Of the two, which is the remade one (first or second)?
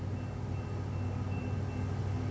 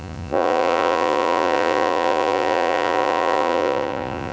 second